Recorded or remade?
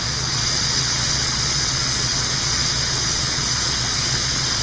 remade